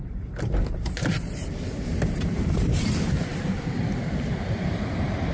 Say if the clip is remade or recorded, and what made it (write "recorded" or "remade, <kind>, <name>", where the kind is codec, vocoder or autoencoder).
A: remade, vocoder, BigVGAN v2